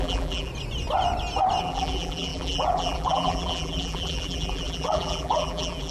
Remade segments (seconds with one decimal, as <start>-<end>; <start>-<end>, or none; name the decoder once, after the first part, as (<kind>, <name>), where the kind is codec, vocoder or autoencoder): 0.0-0.5 (vocoder, BigVGAN v2); 1.6-5.9